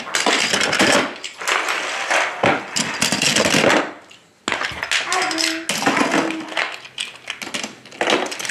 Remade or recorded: recorded